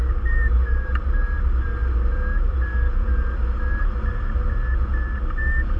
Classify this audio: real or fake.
real